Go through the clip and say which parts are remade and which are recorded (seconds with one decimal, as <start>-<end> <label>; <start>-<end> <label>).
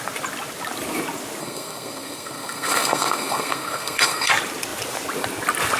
0.0-1.4 recorded; 1.4-4.3 remade; 4.3-5.8 recorded